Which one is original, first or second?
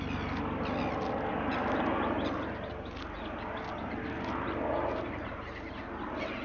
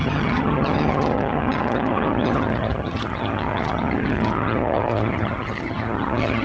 first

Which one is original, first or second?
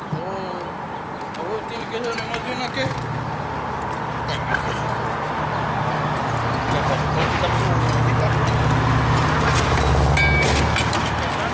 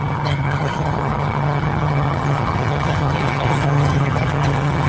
first